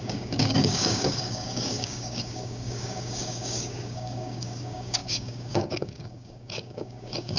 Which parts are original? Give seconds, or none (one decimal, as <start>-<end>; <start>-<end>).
none

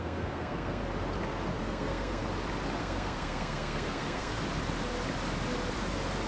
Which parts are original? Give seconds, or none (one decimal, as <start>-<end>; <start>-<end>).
0.8-1.6; 2.2-2.8; 4.3-6.3

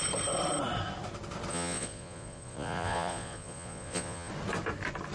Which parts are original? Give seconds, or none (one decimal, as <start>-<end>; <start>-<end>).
0.0-1.5; 4.3-5.1

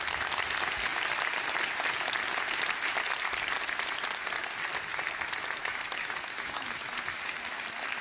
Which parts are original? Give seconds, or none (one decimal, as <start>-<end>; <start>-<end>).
0.0-5.7; 7.3-8.0

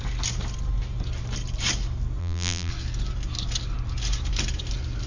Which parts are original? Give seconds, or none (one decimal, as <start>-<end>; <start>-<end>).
0.0-2.2; 2.7-5.1

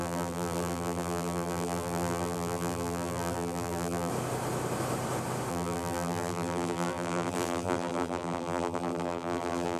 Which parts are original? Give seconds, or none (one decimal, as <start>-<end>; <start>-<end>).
4.1-5.5

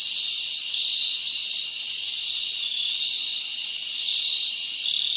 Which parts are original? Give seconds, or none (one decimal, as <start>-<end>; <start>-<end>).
0.0-5.2

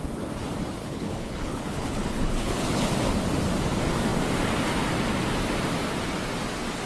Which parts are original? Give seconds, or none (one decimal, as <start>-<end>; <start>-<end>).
0.0-0.8; 2.9-6.9